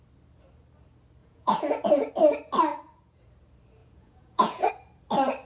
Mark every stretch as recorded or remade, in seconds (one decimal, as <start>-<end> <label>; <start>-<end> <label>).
0.0-1.2 recorded; 1.2-2.1 remade; 2.1-2.7 recorded; 2.7-3.2 remade; 3.2-3.8 recorded; 3.8-4.7 remade; 4.7-5.4 recorded